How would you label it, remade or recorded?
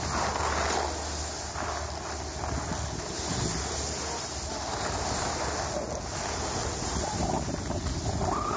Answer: recorded